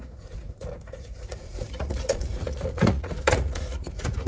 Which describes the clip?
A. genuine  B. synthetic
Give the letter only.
B